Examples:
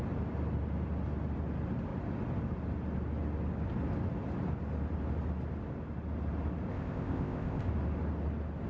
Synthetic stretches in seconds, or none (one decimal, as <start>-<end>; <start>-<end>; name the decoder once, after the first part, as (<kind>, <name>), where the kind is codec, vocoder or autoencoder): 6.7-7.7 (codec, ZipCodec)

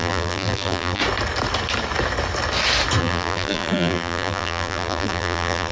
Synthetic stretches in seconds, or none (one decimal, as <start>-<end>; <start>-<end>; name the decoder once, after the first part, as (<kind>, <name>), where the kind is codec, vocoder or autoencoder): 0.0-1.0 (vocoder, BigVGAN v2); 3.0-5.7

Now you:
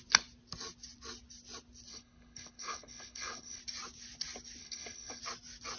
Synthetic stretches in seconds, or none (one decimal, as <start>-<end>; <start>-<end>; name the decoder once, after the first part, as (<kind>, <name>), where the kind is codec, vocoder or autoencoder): 1.9-3.6 (codec, HILCodec); 4.6-5.2

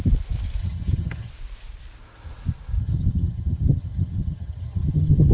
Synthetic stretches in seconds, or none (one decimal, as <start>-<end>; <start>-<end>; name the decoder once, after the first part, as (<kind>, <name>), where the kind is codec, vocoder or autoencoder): 0.6-1.3 (vocoder, HiFi-GAN); 2.8-5.3

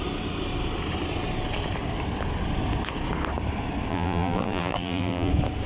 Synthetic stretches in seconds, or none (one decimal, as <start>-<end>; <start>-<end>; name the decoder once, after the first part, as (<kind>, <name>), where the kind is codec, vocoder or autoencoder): 3.9-5.3 (vocoder, BigVGAN v2)

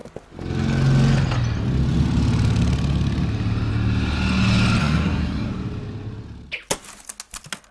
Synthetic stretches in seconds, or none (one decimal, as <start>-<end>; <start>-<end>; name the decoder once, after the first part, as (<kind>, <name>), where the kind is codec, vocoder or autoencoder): 4.8-5.5 (codec, SNAC)

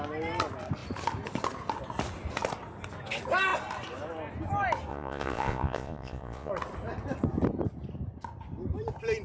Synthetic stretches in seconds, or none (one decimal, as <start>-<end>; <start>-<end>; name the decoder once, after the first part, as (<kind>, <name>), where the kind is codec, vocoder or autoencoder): 4.9-6.5 (vocoder, Vocos)

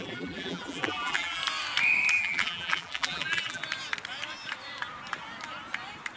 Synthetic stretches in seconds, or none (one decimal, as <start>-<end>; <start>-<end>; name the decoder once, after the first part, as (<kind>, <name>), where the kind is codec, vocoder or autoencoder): 0.0-1.4 (vocoder, BigVGAN v2); 2.1-3.6